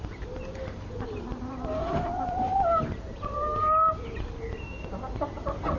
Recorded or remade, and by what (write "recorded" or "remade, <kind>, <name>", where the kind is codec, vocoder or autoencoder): recorded